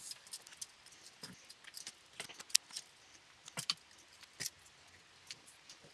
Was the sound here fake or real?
real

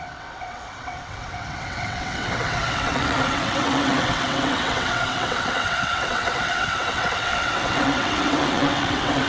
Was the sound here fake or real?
fake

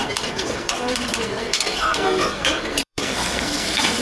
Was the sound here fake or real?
fake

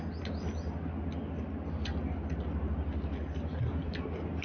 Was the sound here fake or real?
real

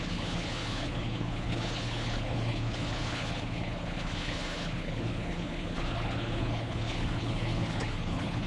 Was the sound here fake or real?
fake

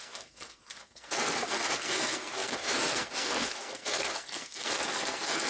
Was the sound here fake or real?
fake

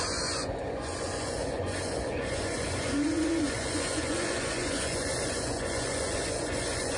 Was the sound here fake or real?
fake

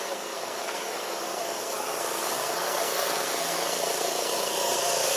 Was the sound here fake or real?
fake